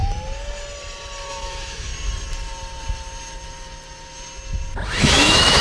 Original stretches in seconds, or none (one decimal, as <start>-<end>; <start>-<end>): 0.0-1.3; 1.9-5.0